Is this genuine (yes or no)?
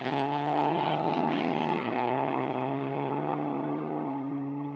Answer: no